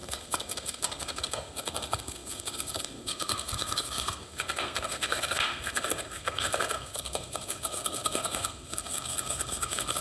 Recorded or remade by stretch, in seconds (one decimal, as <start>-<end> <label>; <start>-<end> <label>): 0.0-10.0 remade